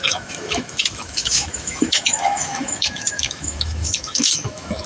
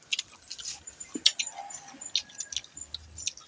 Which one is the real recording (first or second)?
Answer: second